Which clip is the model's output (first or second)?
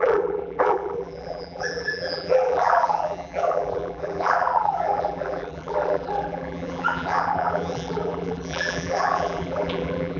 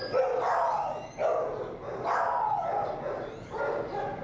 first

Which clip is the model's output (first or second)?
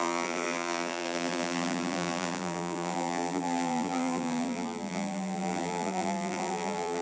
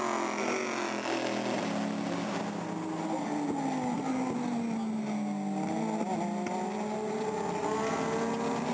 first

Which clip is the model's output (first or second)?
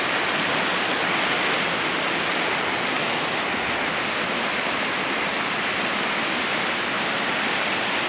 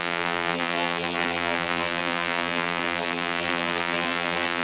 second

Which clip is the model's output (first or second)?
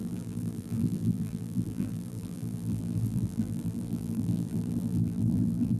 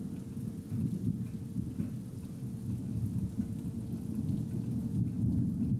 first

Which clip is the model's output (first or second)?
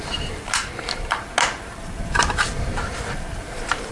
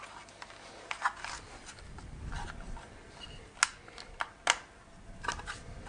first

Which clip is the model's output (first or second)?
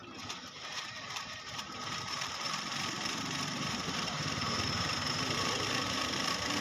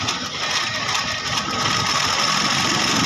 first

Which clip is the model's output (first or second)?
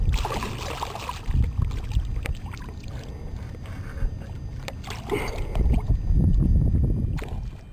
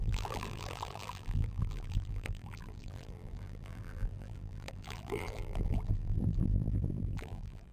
second